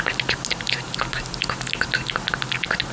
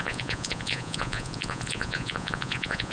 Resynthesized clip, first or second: second